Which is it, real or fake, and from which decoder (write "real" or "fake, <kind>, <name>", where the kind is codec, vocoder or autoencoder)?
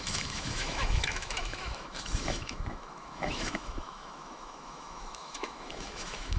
fake, autoencoder, DAC-VAE